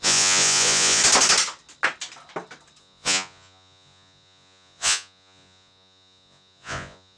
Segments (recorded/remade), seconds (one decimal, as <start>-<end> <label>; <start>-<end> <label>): 0.0-1.0 remade; 1.0-2.8 recorded; 2.8-7.2 remade